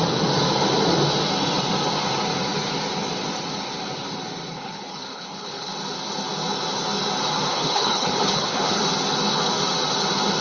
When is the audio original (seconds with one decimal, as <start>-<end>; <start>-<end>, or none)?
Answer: 0.0-4.5; 5.7-7.5; 8.8-10.4